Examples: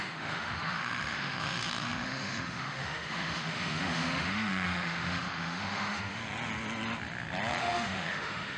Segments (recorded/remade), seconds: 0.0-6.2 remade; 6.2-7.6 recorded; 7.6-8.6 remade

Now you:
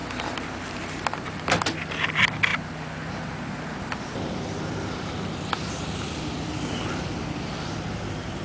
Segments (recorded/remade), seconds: 0.0-8.4 recorded

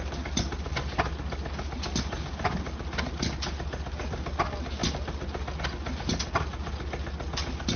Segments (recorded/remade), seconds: 0.0-7.8 recorded

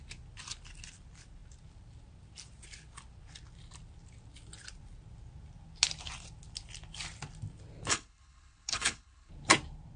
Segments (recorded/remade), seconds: 0.0-7.9 recorded; 7.9-9.3 remade; 9.3-10.0 recorded

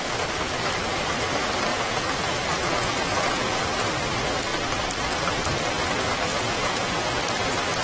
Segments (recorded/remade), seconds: 0.0-1.7 recorded; 1.7-3.6 remade; 3.6-6.3 recorded; 6.3-7.2 remade; 7.2-7.8 recorded

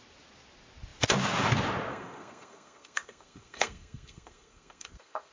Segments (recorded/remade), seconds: 0.0-1.9 recorded; 1.9-5.3 remade